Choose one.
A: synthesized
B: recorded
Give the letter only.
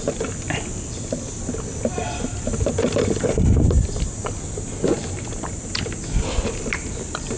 B